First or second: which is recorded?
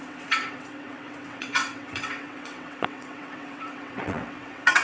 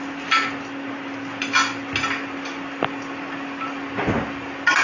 second